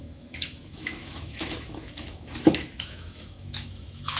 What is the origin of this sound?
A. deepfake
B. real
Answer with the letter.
A